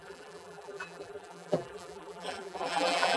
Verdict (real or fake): fake